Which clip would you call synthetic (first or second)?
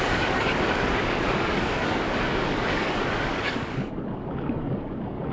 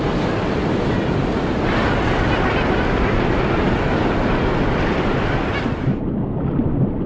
first